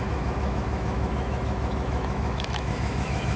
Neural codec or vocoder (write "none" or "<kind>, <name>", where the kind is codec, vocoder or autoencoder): autoencoder, DAC-VAE